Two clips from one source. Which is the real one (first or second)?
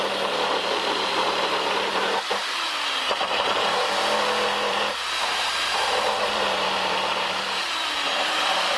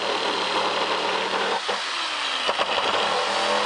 second